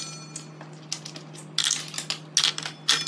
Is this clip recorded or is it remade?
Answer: recorded